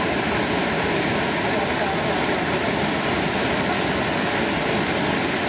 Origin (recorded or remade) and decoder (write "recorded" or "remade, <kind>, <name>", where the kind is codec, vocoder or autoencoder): recorded